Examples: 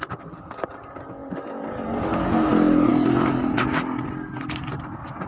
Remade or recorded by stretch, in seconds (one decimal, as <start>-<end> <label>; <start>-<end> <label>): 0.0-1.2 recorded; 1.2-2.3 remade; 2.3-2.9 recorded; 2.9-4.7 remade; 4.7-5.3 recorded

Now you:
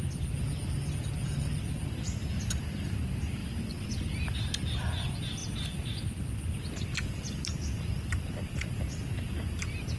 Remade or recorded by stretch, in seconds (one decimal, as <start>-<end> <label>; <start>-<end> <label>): 0.0-3.4 recorded; 3.4-4.8 remade; 4.8-10.0 recorded

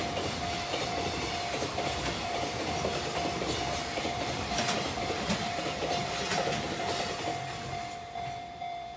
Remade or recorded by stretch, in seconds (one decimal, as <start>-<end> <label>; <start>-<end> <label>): 0.0-0.8 recorded; 0.8-2.9 remade; 2.9-4.0 recorded; 4.0-7.3 remade; 7.3-7.9 recorded; 7.9-9.0 remade

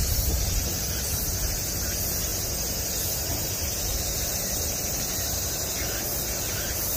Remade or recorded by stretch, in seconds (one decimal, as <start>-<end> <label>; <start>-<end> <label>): 0.0-0.8 remade; 0.8-3.9 recorded; 3.9-5.5 remade; 5.5-7.0 recorded

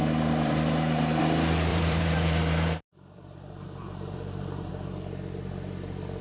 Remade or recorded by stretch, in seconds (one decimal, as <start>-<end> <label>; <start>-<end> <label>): 0.0-1.2 remade; 1.2-1.7 recorded; 1.7-4.7 remade; 4.7-6.2 recorded

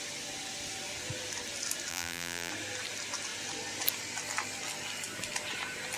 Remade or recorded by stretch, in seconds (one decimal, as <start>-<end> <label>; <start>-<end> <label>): 0.0-1.9 recorded; 1.9-2.5 remade; 2.5-6.0 recorded